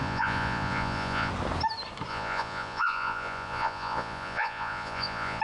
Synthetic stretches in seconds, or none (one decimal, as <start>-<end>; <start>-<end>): 0.0-1.3; 2.1-5.4